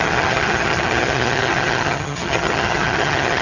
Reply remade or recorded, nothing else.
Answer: remade